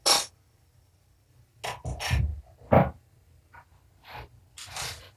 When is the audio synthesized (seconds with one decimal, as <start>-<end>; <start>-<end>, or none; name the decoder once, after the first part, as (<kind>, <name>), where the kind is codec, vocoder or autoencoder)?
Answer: none